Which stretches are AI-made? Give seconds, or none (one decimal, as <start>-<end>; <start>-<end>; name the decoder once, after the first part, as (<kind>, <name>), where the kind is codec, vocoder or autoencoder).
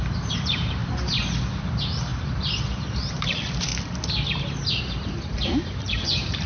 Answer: 0.0-0.8 (vocoder, BigVGAN v2); 1.5-3.7; 4.8-6.5